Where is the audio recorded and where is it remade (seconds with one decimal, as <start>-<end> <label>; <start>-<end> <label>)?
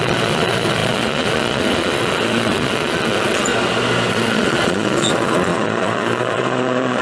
0.0-3.5 remade; 3.5-4.1 recorded; 4.1-7.0 remade